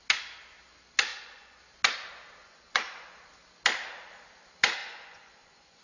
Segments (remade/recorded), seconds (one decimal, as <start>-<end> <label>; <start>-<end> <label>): 0.0-1.1 recorded; 1.1-1.6 remade; 1.6-2.4 recorded; 2.4-3.2 remade; 3.2-4.8 recorded; 4.8-5.8 remade